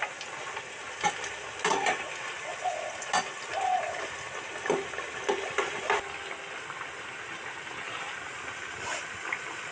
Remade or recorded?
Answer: recorded